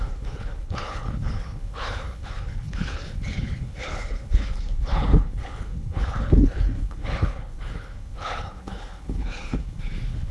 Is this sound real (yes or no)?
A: no